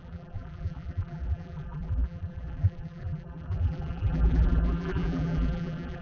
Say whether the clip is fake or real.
fake